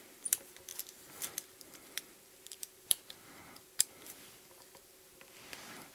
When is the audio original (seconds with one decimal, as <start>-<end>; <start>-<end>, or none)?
0.7-1.2